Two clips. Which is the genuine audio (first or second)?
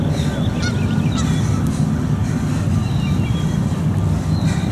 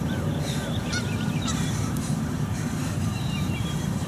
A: first